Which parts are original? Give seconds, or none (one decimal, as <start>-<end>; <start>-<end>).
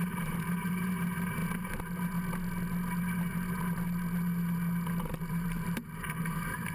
1.4-5.2